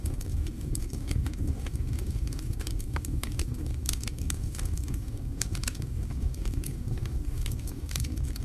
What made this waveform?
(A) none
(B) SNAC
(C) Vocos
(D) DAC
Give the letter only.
D